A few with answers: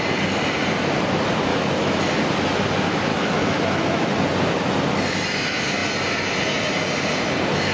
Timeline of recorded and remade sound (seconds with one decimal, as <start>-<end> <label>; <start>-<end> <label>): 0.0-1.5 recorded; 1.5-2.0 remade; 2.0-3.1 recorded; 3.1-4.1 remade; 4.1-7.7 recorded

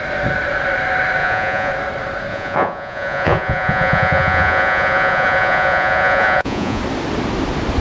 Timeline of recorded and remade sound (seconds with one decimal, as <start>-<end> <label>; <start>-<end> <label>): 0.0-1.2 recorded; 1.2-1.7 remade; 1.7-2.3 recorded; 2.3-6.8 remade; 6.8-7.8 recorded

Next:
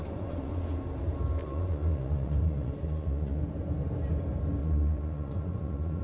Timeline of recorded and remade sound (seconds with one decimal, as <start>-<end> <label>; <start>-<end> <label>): 0.0-0.6 remade; 0.6-1.4 recorded; 1.4-3.4 remade; 3.4-4.6 recorded; 4.6-6.0 remade